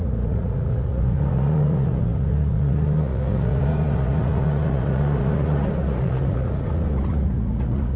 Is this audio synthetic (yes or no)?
yes